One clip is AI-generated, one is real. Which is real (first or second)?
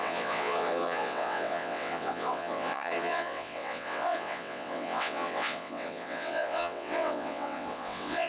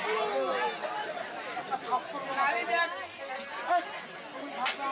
second